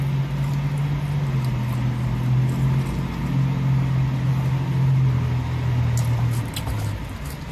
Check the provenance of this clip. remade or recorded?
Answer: recorded